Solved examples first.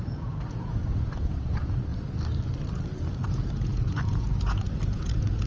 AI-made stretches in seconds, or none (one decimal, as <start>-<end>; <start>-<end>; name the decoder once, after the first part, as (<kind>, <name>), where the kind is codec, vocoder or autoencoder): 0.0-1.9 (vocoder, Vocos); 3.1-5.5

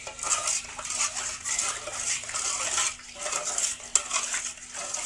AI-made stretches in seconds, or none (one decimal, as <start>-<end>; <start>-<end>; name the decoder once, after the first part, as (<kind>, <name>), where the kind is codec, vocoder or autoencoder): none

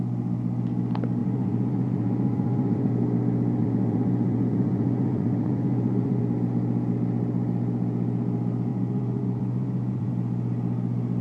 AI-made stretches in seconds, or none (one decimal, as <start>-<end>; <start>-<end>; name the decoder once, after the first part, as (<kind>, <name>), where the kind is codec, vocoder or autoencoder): 1.2-2.9 (vocoder, Vocos); 3.6-6.2; 8.7-10.1

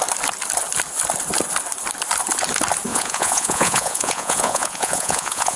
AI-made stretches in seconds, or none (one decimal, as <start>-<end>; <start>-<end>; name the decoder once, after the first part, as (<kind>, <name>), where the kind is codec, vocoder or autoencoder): 2.9-5.6 (vocoder, Vocos)

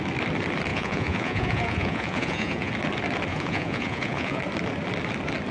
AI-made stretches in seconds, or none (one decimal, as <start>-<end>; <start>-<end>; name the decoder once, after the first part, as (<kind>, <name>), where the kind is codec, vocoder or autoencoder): 0.7-2.7 (vocoder, Vocos); 3.3-4.4

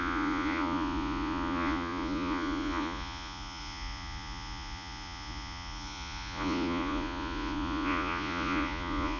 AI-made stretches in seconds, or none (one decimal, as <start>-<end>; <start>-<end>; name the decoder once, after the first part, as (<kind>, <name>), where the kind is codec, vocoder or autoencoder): 0.0-9.2 (vocoder, Vocos)